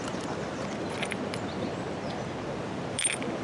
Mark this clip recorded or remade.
remade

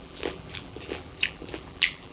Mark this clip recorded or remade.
remade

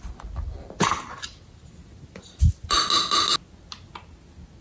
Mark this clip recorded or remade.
recorded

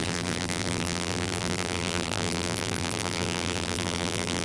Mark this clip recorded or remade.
remade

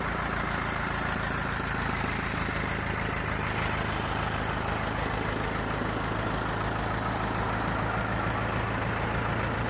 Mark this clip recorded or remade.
recorded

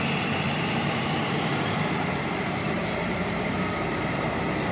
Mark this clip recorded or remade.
remade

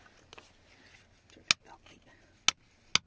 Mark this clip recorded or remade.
recorded